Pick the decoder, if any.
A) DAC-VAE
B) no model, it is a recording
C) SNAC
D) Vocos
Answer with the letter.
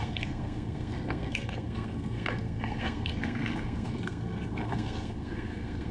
C